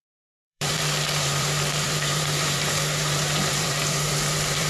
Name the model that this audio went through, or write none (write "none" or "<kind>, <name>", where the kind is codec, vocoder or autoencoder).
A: vocoder, BigVGAN v2